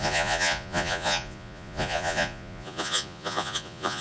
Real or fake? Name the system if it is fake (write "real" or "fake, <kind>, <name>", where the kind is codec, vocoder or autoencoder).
fake, vocoder, Vocos